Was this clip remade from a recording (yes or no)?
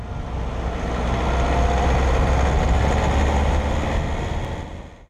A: no